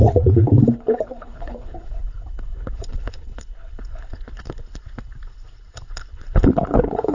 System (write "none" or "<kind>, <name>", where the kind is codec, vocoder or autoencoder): codec, HILCodec